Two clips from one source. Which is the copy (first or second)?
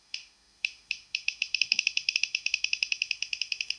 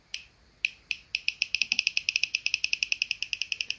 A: first